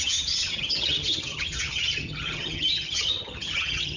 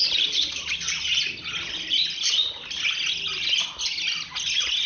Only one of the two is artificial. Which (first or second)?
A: first